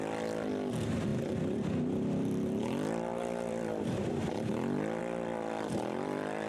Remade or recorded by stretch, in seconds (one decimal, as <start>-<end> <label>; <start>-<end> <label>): 0.0-6.5 remade